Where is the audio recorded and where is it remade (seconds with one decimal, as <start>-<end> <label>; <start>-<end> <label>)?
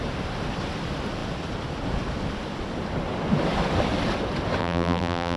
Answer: 0.0-4.6 recorded; 4.6-5.4 remade